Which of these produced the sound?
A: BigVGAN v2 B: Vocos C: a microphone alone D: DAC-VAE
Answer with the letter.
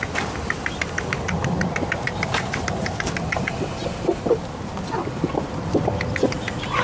C